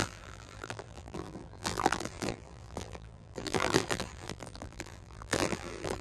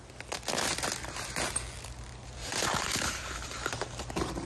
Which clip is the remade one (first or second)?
first